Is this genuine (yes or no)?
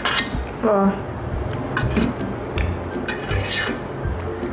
yes